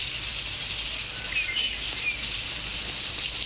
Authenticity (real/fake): fake